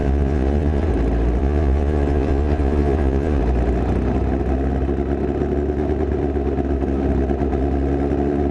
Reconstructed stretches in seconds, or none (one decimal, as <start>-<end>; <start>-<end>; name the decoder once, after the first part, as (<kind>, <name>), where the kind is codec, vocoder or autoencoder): 0.0-0.9 (vocoder, Vocos); 1.4-3.4